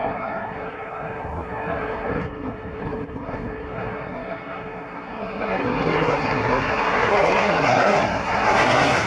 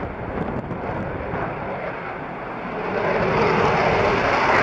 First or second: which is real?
second